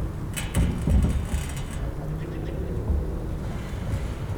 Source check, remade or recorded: recorded